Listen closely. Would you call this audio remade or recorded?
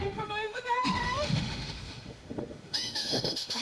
remade